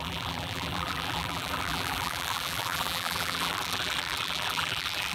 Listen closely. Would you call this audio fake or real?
fake